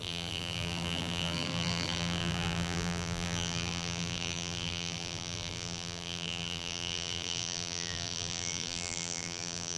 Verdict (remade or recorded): remade